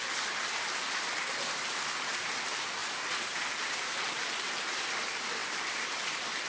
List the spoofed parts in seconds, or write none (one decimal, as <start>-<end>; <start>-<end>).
5.4-6.5

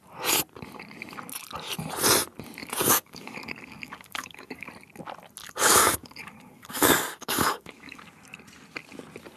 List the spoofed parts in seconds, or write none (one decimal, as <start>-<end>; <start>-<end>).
2.6-4.7; 5.4-8.0